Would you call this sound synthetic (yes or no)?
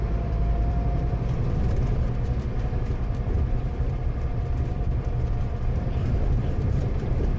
yes